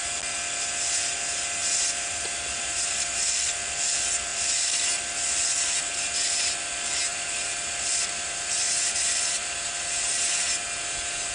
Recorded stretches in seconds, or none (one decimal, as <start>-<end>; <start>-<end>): 0.0-1.6; 3.2-4.3; 5.9-7.1; 10.6-11.3